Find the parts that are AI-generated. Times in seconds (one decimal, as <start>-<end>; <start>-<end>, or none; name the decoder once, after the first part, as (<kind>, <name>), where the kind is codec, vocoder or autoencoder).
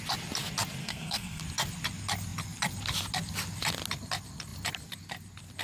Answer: 0.8-1.4 (codec, SNAC)